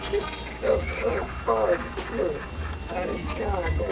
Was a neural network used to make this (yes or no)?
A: no